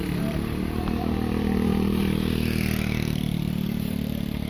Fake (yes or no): yes